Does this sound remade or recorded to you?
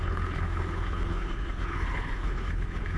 remade